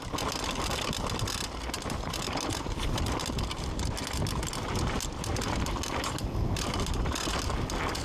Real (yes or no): yes